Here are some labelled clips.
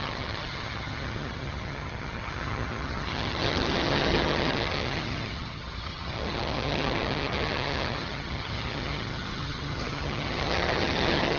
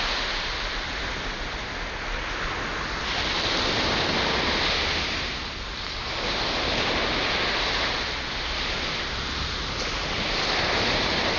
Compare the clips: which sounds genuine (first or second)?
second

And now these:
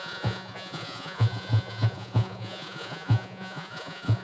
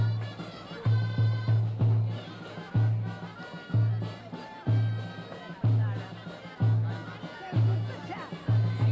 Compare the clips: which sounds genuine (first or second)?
second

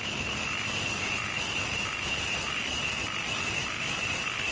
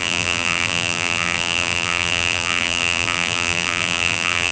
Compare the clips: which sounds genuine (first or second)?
first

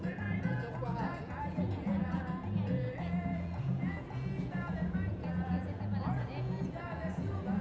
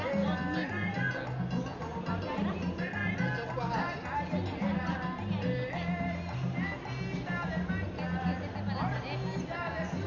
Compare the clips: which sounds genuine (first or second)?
second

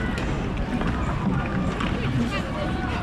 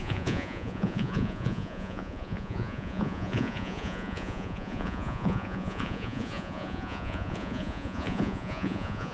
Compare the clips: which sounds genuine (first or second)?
first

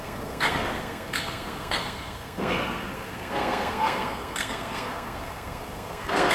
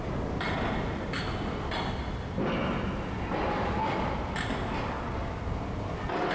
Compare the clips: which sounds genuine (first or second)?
second